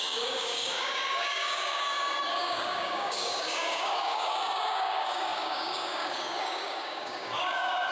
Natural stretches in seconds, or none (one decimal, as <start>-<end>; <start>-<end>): none